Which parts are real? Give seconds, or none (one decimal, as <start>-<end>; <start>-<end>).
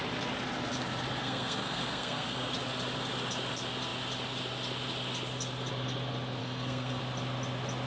0.0-1.2; 2.5-6.4; 7.0-7.9